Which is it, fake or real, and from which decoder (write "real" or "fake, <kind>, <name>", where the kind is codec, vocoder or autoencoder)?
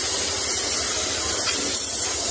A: real